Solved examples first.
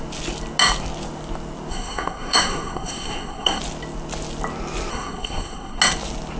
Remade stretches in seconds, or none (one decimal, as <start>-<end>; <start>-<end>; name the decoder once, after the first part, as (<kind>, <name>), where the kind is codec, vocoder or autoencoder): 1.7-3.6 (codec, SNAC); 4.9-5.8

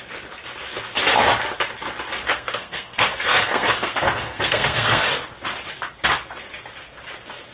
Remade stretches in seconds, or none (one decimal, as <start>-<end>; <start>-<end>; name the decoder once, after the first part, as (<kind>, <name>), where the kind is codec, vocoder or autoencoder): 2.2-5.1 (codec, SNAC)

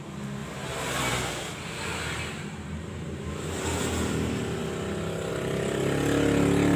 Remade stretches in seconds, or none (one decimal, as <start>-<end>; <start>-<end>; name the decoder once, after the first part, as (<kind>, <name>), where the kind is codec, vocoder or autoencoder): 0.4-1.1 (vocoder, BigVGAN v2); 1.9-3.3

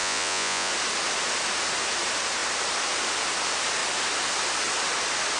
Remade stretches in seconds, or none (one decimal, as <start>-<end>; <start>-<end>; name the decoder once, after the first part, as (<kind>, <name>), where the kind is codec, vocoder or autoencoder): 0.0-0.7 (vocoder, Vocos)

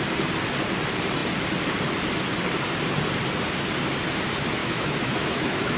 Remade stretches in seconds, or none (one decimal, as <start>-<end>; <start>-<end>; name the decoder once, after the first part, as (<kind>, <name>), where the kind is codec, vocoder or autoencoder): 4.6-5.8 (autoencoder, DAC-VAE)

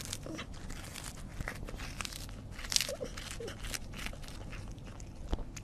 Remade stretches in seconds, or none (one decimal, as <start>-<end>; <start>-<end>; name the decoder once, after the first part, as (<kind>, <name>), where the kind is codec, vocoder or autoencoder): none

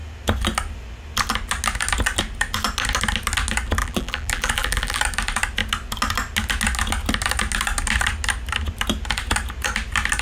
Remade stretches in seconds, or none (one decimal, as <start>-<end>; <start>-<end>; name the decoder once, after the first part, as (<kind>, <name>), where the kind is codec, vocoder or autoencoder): 3.8-5.0 (vocoder, BigVGAN v2)

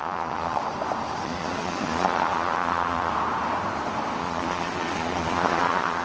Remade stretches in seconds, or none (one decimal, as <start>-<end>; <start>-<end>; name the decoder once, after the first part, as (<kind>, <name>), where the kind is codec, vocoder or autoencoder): 0.0-0.6 (vocoder, Vocos); 1.2-3.1; 4.2-6.0